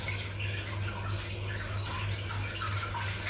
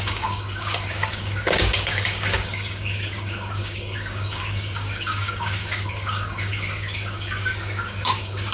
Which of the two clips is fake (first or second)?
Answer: second